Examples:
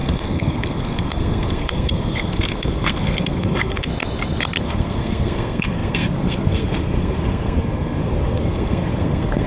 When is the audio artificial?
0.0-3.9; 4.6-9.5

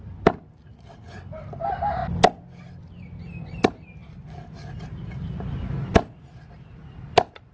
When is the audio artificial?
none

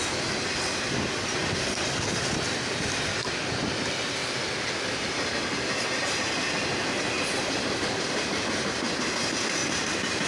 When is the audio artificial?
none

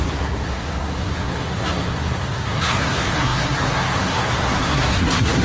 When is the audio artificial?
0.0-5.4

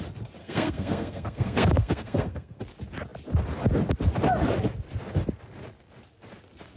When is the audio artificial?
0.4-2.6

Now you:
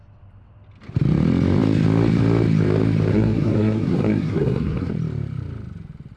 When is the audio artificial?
3.1-4.9